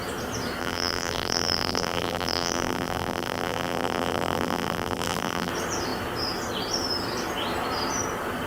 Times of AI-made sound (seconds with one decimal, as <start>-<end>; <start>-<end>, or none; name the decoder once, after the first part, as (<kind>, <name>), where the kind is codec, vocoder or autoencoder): 0.6-5.5 (vocoder, BigVGAN v2)